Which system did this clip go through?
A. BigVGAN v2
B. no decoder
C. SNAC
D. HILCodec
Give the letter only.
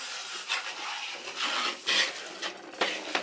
B